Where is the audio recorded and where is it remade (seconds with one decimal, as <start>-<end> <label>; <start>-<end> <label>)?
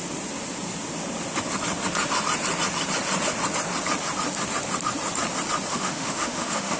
0.0-5.7 recorded; 5.7-6.8 remade